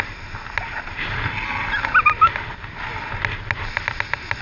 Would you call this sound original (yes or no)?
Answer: yes